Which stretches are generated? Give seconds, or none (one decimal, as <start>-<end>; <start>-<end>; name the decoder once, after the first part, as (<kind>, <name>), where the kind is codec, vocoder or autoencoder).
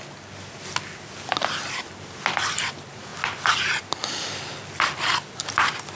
none